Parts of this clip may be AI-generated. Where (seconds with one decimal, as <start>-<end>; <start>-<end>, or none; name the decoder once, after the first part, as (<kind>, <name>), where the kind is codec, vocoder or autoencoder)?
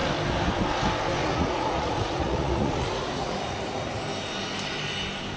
1.2-4.0 (vocoder, Vocos)